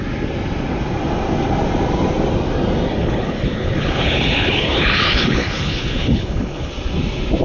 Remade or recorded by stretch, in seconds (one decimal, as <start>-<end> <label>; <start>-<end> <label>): 0.0-3.0 recorded; 3.0-6.7 remade; 6.7-7.4 recorded